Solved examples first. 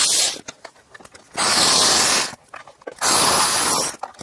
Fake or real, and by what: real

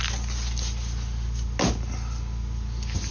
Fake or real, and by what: real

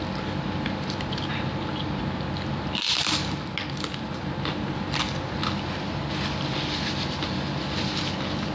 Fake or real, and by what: real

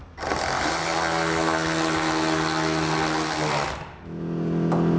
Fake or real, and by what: real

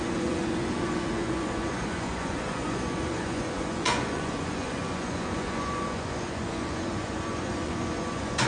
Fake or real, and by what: fake, vocoder, Vocos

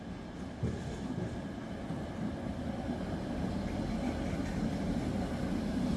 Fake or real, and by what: real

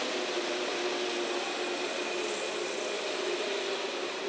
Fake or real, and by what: real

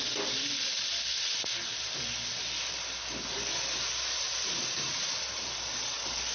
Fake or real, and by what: real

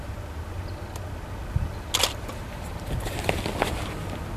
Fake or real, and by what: real